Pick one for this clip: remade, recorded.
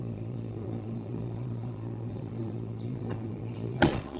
remade